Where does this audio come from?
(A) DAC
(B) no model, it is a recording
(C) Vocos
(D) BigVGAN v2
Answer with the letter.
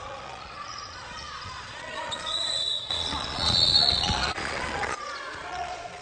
C